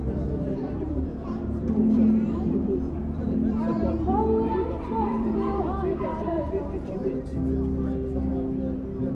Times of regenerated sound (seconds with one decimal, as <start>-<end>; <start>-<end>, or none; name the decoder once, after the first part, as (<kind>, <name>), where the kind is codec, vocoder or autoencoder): 0.0-7.3 (vocoder, BigVGAN v2)